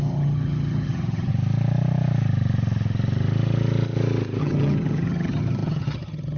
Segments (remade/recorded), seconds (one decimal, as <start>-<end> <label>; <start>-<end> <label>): 0.0-1.3 remade; 1.3-4.4 recorded; 4.4-6.4 remade